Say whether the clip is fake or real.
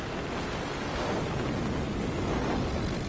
real